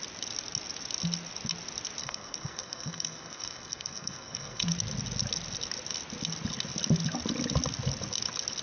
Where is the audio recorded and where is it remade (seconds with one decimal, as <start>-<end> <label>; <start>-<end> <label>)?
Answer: 0.0-2.0 recorded; 2.0-4.6 remade; 4.6-8.6 recorded